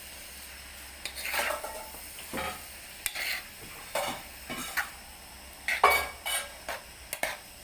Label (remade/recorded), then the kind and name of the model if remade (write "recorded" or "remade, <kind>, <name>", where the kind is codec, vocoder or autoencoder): recorded